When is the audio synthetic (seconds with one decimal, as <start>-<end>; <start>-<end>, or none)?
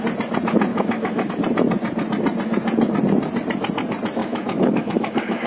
0.7-1.3; 4.2-5.5